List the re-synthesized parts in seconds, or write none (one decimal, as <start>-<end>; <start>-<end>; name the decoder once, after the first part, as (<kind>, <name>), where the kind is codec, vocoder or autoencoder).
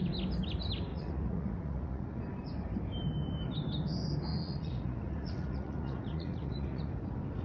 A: 0.9-2.2 (vocoder, Vocos); 4.3-6.9